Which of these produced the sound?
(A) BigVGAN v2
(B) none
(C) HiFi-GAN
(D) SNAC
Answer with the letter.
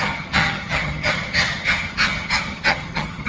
C